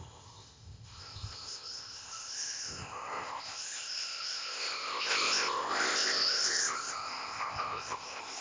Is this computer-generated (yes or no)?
yes